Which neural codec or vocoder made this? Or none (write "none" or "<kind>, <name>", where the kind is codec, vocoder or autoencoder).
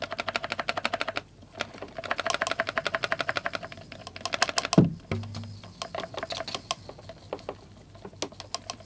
none